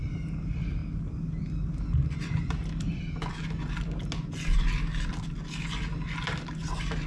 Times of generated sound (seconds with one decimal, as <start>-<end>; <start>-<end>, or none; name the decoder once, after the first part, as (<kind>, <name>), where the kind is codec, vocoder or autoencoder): none